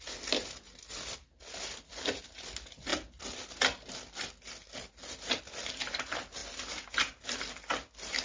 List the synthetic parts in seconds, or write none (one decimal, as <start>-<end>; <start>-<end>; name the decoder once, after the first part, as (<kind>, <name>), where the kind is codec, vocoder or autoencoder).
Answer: none